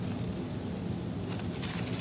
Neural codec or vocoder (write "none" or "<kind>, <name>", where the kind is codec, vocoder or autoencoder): none